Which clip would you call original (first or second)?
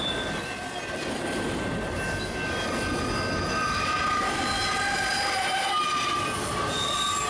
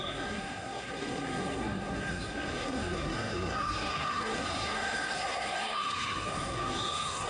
first